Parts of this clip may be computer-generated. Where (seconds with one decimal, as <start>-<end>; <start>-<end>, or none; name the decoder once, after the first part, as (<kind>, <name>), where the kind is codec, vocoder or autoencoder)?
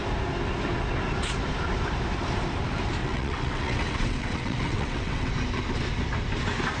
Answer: 3.0-5.3 (vocoder, WaveNeXt)